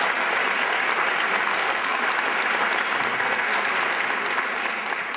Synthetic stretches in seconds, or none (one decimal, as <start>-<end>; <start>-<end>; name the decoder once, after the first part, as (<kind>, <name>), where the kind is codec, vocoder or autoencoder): 1.5-2.0 (codec, SNAC); 3.1-3.7